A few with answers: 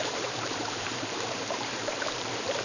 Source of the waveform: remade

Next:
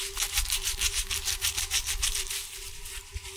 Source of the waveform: remade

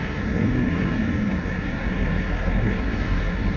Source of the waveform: remade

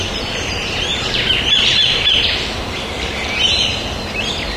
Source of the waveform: remade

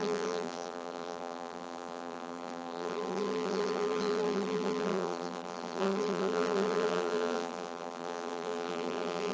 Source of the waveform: remade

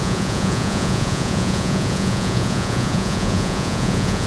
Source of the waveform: remade